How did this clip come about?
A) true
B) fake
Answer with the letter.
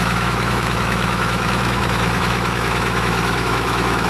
B